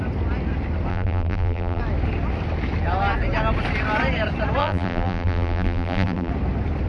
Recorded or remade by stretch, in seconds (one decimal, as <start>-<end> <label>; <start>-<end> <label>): 0.0-0.9 recorded; 0.9-1.8 remade; 1.8-4.6 recorded; 4.6-6.3 remade; 6.3-6.9 recorded